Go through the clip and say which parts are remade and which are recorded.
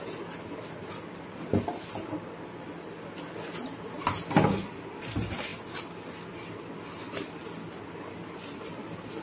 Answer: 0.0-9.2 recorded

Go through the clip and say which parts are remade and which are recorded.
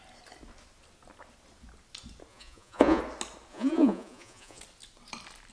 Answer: 0.0-2.3 recorded; 2.3-3.0 remade; 3.0-3.5 recorded; 3.5-4.6 remade; 4.6-5.5 recorded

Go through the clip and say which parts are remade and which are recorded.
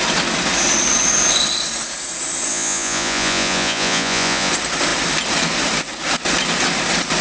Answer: 0.0-2.5 recorded; 2.5-4.5 remade; 4.5-7.2 recorded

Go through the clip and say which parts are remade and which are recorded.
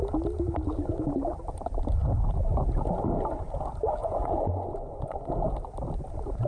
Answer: 0.0-4.0 recorded; 4.0-5.3 remade; 5.3-6.5 recorded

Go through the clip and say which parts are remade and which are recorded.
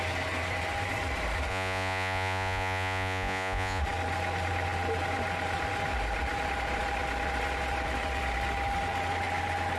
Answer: 0.0-1.5 recorded; 1.5-3.8 remade; 3.8-9.8 recorded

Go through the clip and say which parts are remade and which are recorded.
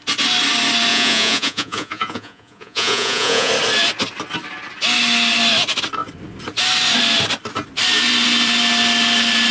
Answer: 0.0-0.9 recorded; 0.9-3.5 remade; 3.5-9.5 recorded